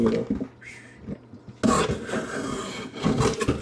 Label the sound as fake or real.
real